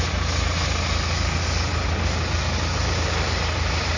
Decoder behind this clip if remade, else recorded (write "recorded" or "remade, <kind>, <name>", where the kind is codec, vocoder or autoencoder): recorded